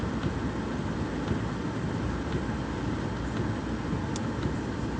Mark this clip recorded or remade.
recorded